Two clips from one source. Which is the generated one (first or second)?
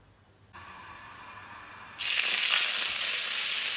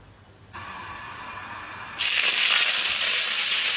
second